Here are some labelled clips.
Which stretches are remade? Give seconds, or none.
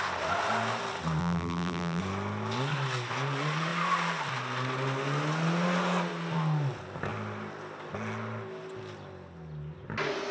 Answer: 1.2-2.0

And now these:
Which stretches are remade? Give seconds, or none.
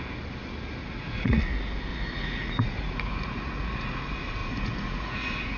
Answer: 0.8-1.4; 1.9-4.0; 4.4-5.6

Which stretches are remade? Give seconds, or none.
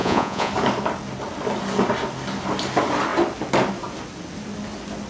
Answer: 0.0-0.5